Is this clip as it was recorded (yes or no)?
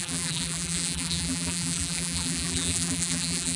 no